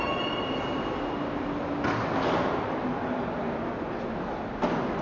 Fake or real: real